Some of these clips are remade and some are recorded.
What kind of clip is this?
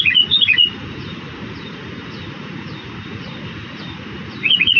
remade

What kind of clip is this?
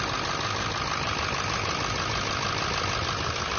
recorded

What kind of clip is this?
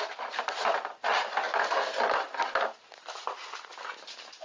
recorded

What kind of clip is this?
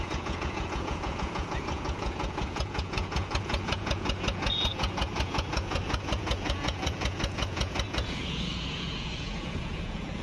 remade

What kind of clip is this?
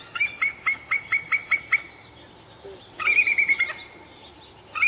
recorded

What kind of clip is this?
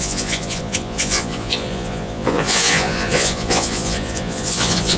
remade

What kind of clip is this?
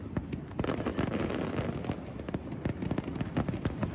recorded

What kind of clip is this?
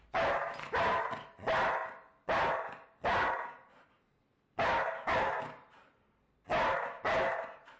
recorded